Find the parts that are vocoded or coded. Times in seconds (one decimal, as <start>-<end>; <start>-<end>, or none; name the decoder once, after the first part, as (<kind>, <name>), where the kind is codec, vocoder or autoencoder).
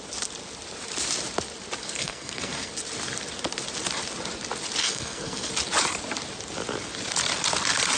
1.8-2.7 (codec, SNAC); 4.8-5.5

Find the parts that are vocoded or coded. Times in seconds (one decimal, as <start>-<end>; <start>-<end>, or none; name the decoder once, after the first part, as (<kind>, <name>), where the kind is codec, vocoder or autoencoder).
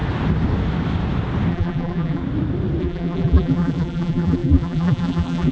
1.5-2.2 (vocoder, BigVGAN v2); 2.8-5.5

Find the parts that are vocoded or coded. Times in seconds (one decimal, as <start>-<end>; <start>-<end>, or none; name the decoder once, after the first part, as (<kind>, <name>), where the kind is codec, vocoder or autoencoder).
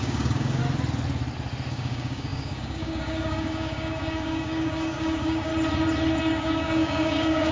0.0-0.6 (codec, DAC); 1.7-5.5; 6.2-7.5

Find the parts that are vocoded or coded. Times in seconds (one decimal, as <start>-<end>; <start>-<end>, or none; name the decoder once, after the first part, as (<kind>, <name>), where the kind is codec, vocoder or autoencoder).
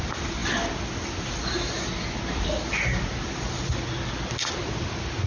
none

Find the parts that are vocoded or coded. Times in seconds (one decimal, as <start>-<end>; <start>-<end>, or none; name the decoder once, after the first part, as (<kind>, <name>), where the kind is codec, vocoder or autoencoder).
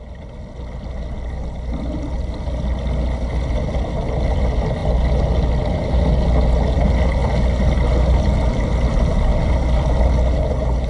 none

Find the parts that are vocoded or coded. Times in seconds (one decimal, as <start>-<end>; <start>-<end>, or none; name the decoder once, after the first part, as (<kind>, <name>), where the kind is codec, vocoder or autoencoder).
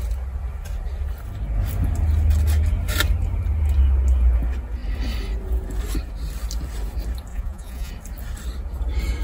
7.3-7.9 (vocoder, Vocos)